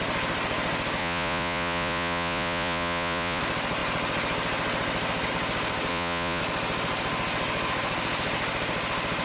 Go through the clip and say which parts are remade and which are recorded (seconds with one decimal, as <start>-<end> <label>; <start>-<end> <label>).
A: 0.0-1.0 recorded; 1.0-3.4 remade; 3.4-5.9 recorded; 5.9-6.4 remade; 6.4-9.2 recorded